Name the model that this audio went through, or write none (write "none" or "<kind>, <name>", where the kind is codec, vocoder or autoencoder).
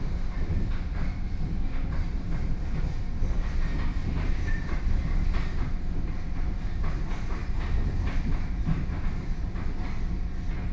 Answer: none